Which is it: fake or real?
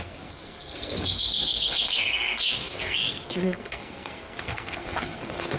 fake